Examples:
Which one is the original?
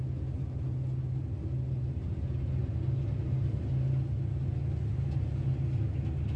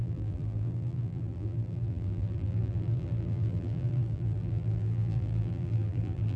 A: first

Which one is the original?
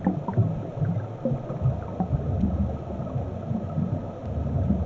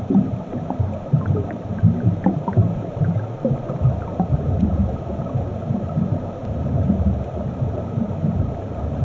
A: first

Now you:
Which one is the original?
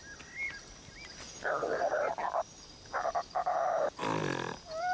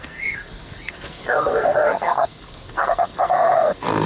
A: first